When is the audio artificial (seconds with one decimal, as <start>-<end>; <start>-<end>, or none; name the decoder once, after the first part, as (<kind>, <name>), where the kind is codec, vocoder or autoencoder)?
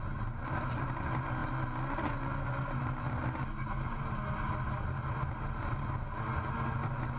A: none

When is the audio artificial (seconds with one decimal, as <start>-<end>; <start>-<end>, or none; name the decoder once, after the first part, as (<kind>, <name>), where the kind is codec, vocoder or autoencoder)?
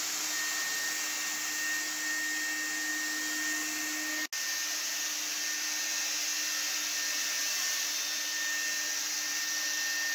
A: none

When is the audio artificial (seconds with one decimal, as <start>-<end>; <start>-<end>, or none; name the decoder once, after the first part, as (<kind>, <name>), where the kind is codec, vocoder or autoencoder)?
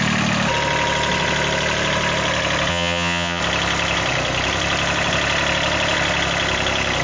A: 2.7-3.4 (vocoder, HiFi-GAN)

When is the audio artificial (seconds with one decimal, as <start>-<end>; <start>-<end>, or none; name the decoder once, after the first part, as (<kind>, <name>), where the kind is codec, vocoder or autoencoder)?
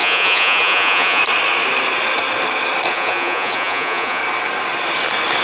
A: 0.0-1.2 (vocoder, Vocos); 2.9-4.2